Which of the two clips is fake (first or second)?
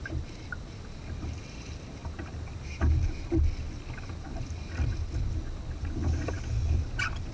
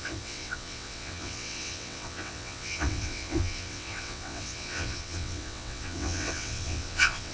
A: second